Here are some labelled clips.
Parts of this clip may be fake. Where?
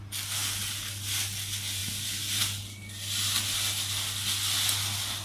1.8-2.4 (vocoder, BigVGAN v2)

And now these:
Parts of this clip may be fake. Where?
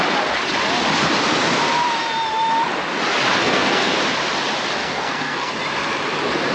3.4-4.0 (codec, SNAC); 4.8-5.5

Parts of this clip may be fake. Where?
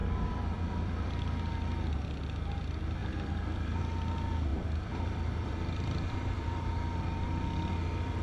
0.0-1.1 (vocoder, BigVGAN v2); 3.0-3.8; 4.5-6.8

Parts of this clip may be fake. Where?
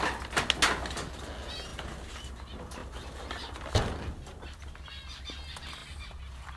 none